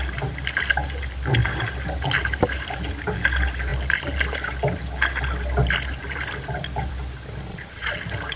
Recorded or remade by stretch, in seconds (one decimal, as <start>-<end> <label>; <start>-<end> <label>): 0.0-7.5 recorded; 7.5-8.0 remade; 8.0-8.4 recorded